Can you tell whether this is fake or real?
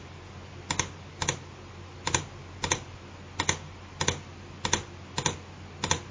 real